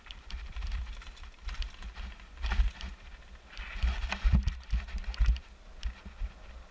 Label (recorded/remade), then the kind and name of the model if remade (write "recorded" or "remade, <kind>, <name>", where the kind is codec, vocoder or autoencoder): recorded